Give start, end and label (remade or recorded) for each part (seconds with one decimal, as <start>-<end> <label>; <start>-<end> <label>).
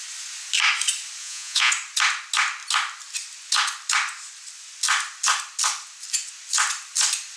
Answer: 0.0-1.2 recorded; 1.2-1.7 remade; 1.7-7.4 recorded